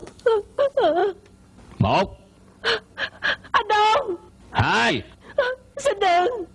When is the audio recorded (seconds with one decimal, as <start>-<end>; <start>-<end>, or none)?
0.6-6.5